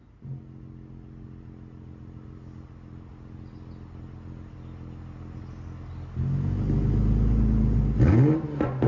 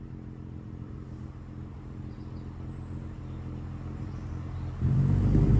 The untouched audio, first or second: first